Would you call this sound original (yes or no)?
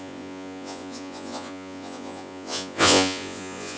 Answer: no